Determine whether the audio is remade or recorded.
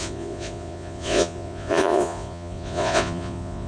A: remade